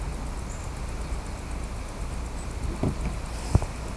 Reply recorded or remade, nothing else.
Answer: recorded